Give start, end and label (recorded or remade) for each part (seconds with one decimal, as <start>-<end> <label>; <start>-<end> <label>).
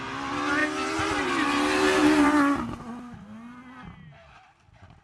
0.0-5.0 recorded